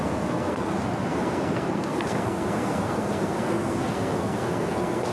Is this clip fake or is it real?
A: fake